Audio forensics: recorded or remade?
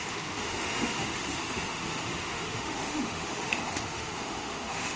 remade